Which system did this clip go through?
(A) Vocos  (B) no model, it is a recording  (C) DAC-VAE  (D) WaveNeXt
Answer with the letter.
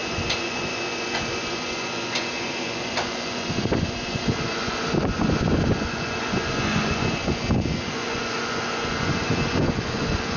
A